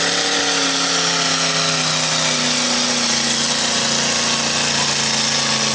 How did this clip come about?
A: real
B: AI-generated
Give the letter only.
A